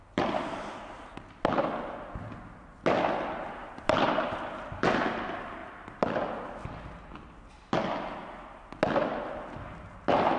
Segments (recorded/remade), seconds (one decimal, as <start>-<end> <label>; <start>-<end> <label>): 0.0-10.4 recorded